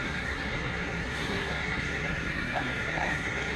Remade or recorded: remade